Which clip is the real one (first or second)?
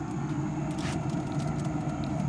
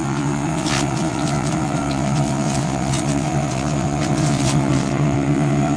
first